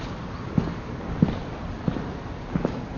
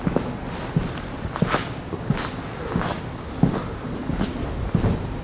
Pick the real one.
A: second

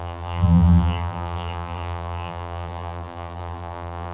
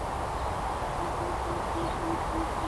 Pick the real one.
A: second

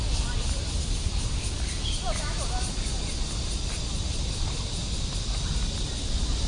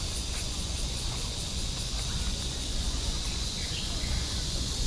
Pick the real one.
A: first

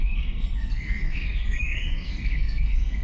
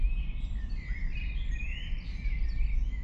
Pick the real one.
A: second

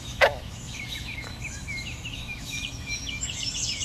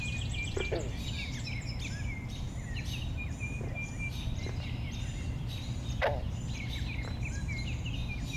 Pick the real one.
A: second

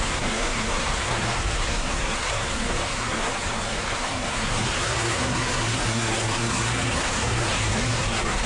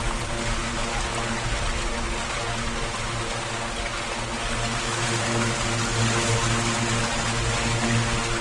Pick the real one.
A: second